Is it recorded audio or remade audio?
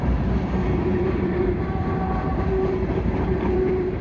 remade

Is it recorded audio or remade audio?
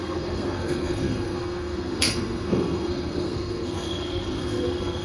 remade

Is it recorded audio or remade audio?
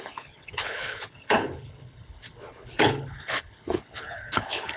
remade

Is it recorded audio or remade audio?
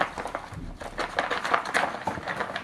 recorded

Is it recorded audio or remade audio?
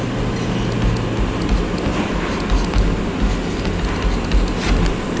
recorded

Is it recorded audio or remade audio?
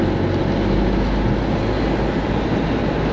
recorded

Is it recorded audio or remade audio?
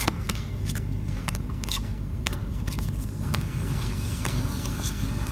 remade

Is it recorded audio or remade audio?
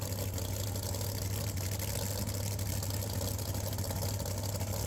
recorded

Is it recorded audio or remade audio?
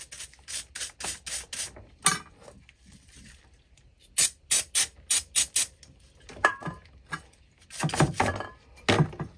recorded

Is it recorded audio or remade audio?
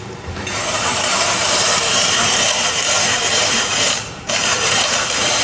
remade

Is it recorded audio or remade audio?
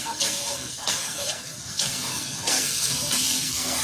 remade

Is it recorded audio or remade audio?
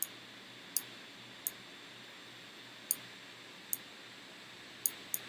recorded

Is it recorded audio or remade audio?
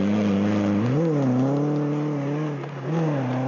recorded